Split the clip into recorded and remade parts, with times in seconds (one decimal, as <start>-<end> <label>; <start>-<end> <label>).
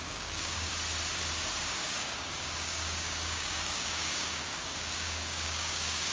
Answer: 0.0-0.7 remade; 0.7-1.7 recorded; 1.7-6.1 remade